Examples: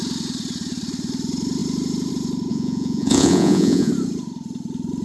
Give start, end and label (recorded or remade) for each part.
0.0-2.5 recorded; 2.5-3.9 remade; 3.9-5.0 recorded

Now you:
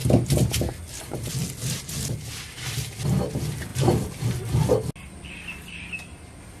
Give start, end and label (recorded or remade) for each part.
0.0-3.7 recorded; 3.7-4.3 remade; 4.3-6.6 recorded

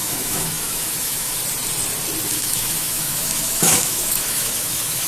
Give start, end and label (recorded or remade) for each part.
0.0-1.4 remade; 1.4-2.3 recorded; 2.3-5.1 remade

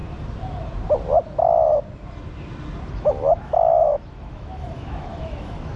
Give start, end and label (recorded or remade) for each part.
0.0-2.9 recorded; 2.9-5.8 remade

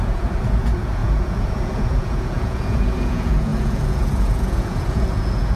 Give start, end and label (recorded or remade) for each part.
0.0-5.6 remade

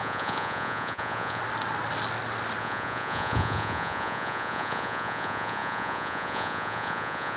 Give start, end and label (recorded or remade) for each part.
0.0-1.4 remade; 1.4-2.6 recorded; 2.6-7.4 remade